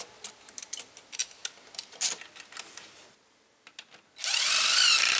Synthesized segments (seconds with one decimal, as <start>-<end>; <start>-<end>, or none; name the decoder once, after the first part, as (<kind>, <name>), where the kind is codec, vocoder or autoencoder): none